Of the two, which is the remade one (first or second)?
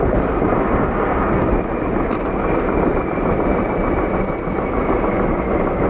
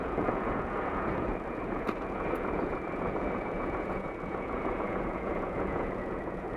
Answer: second